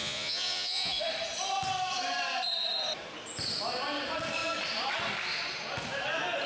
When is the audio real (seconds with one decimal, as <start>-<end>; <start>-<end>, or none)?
1.0-6.5